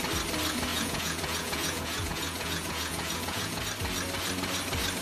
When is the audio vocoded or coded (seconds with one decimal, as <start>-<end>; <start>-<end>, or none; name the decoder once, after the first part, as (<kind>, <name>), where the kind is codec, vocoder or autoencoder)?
0.7-3.6 (vocoder, Vocos)